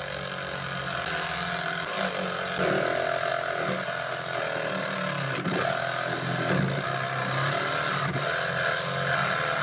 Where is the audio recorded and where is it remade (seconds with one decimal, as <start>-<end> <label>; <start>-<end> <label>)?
0.0-9.6 recorded